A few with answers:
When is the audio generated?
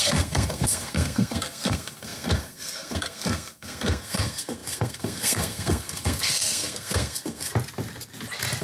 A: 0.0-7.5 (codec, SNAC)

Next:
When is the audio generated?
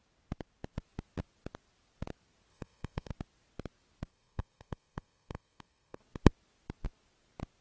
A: 2.5-3.1 (codec, SNAC); 4.1-6.0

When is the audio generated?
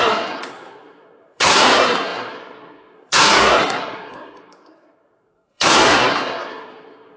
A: 0.0-7.2 (codec, SNAC)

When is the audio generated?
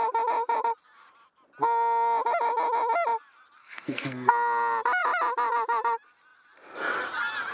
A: 3.6-4.3 (codec, SNAC)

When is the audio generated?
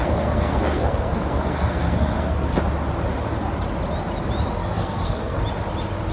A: 0.0-2.5 (codec, SNAC); 4.6-5.4